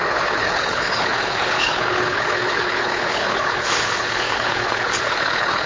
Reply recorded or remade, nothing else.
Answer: remade